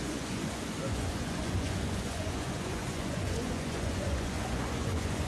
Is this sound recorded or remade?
remade